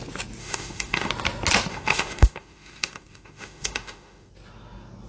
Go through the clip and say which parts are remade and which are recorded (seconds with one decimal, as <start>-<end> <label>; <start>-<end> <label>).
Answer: 0.0-0.4 recorded; 0.4-1.1 remade; 1.1-1.7 recorded; 1.7-4.3 remade; 4.3-5.1 recorded